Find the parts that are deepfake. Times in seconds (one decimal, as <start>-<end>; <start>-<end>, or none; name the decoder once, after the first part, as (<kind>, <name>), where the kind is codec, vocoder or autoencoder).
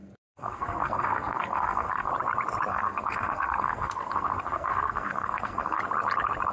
0.0-2.1 (codec, SNAC); 2.7-5.8